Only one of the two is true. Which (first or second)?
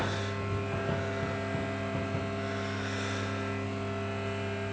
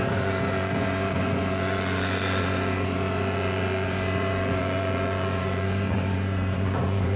first